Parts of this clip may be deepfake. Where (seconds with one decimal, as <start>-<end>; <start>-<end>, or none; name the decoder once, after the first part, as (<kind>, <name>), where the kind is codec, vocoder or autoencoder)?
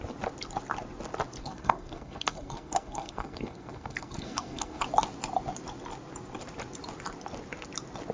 1.4-4.8 (codec, SNAC)